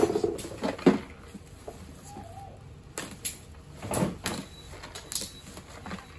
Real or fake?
real